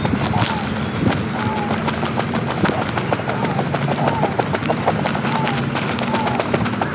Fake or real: real